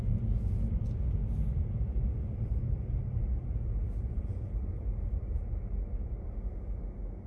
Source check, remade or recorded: recorded